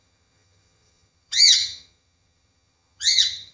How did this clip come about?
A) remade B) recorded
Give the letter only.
A